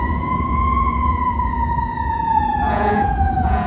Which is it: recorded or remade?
remade